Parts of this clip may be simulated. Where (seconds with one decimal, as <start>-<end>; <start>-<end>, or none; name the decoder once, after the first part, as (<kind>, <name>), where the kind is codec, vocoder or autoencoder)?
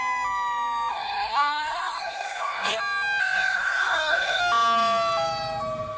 0.9-2.8 (codec, SNAC); 3.2-4.4